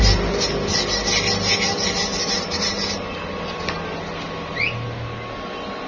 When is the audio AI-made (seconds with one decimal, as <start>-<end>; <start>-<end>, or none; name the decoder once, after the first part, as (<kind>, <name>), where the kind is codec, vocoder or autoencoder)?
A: none